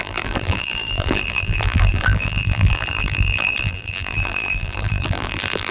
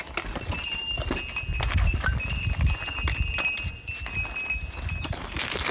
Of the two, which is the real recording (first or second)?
second